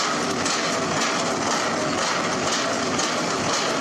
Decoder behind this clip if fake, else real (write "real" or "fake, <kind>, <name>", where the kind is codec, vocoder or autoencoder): real